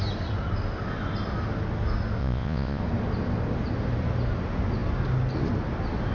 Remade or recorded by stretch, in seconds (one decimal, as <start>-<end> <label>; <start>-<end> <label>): 0.0-2.2 recorded; 2.2-2.8 remade; 2.8-6.1 recorded